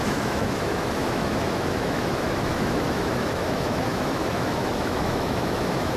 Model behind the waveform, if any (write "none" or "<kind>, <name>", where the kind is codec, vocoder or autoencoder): autoencoder, DAC-VAE